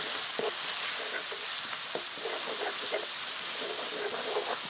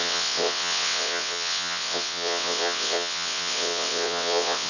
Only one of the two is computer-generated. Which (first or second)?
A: second